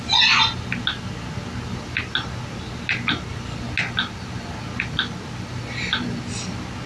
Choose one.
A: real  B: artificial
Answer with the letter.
A